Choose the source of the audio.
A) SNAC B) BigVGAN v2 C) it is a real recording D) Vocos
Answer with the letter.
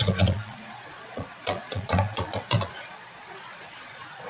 D